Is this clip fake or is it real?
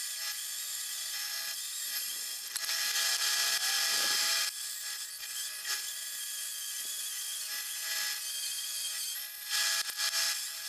real